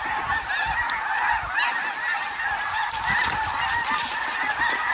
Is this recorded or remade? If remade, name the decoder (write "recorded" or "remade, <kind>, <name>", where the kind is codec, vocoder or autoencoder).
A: recorded